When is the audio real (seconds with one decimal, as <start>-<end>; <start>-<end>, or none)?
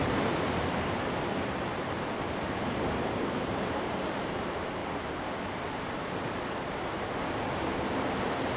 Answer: 4.8-8.2